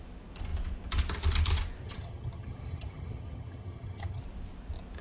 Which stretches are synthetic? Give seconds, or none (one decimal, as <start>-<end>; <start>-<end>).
1.8-4.2